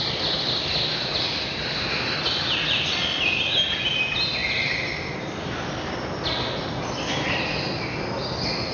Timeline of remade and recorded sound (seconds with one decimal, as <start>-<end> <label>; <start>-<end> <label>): 0.0-8.7 recorded